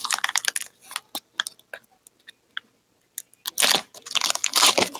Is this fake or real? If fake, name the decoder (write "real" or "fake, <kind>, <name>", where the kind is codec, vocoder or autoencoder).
real